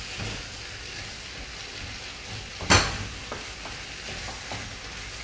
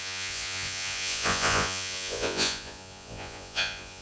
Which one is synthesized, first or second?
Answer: second